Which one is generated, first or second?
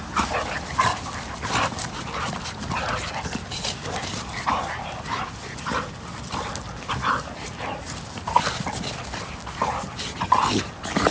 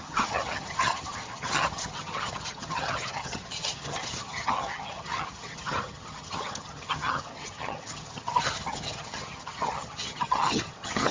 second